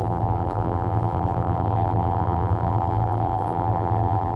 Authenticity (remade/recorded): remade